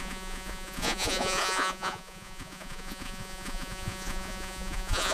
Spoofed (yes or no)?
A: yes